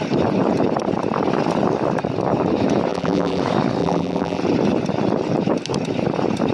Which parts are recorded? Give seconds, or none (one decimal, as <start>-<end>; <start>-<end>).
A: 0.0-2.9; 3.4-3.8; 4.4-6.5

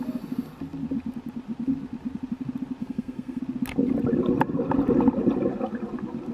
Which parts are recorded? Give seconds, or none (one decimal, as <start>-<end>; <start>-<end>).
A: 0.0-2.8; 3.4-6.3

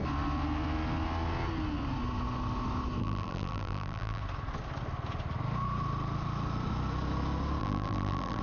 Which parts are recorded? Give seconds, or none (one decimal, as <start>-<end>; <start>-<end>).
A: 0.0-3.0; 4.2-7.6

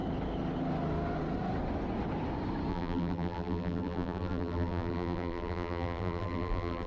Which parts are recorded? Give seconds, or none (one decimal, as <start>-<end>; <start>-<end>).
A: 0.0-2.7